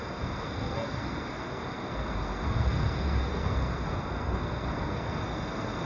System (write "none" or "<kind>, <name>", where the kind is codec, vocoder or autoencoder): codec, SNAC